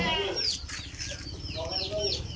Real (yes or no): yes